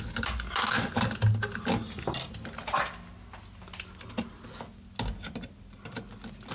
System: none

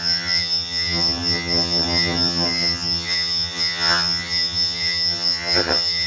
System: vocoder, HiFi-GAN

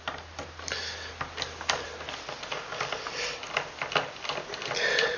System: none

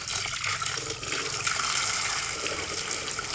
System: none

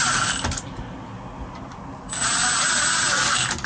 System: none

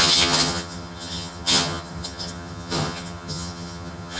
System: vocoder, HiFi-GAN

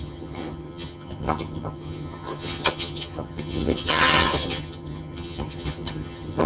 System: vocoder, HiFi-GAN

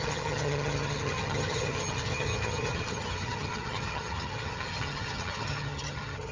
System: vocoder, HiFi-GAN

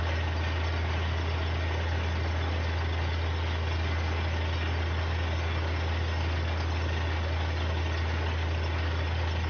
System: none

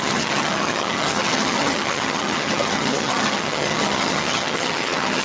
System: vocoder, HiFi-GAN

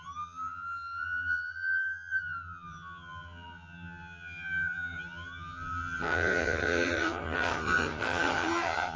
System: vocoder, HiFi-GAN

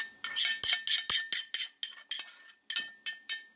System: none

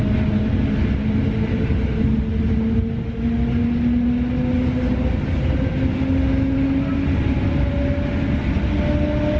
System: none